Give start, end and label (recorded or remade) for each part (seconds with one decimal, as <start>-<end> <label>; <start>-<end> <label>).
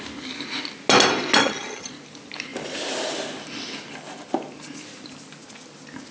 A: 0.0-1.4 recorded; 1.4-1.9 remade; 1.9-6.1 recorded